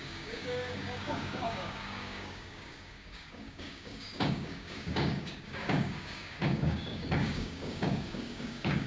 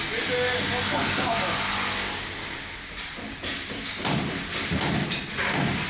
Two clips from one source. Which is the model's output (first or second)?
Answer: first